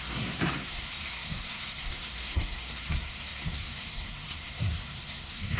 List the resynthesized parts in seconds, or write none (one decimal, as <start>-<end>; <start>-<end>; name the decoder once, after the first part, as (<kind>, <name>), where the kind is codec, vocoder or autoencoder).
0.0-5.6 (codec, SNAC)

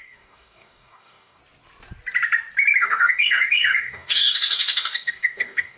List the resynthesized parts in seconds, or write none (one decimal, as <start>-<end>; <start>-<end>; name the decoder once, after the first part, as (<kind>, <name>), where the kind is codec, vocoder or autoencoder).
0.0-1.4 (codec, DAC); 2.8-5.8

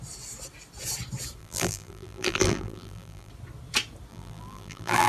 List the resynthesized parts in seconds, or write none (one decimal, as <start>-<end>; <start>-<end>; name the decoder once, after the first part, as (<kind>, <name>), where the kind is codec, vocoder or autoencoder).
1.4-3.3 (vocoder, BigVGAN v2); 4.1-5.1